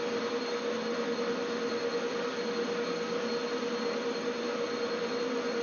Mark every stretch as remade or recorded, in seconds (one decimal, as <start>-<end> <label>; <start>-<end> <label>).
0.0-5.6 recorded

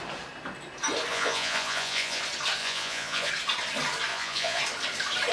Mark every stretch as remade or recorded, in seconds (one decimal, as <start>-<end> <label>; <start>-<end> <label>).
0.0-1.1 recorded; 1.1-2.2 remade; 2.2-2.6 recorded; 2.6-3.3 remade; 3.3-4.1 recorded; 4.1-4.6 remade; 4.6-5.3 recorded

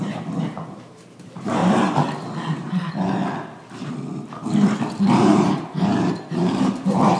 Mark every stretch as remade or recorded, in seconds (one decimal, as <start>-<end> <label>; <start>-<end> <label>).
0.0-1.6 remade; 1.6-2.6 recorded; 2.6-3.2 remade; 3.2-4.9 recorded; 4.9-7.2 remade

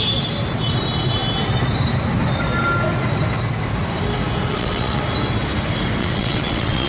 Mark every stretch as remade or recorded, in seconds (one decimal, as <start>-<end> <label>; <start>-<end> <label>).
0.0-4.5 recorded; 4.5-5.0 remade; 5.0-6.0 recorded; 6.0-6.9 remade

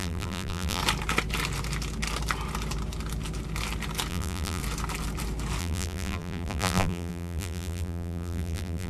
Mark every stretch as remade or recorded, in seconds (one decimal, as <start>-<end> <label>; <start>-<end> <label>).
0.0-0.8 remade; 0.8-4.1 recorded; 4.1-4.6 remade; 4.6-5.6 recorded; 5.6-8.9 remade

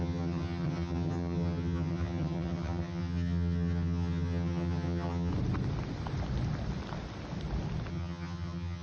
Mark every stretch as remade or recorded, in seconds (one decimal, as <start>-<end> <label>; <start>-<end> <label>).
0.0-5.3 remade; 5.3-7.9 recorded; 7.9-8.8 remade